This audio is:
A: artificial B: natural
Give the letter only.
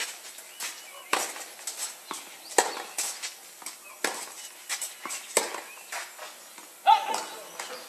B